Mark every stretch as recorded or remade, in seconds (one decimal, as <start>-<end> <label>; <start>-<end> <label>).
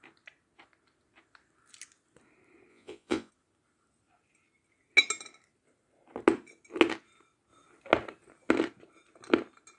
0.0-2.7 recorded; 2.7-3.3 remade; 3.3-9.8 recorded